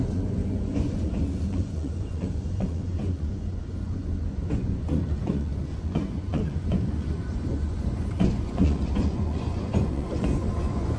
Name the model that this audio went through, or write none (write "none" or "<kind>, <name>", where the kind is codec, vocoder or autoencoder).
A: vocoder, Vocos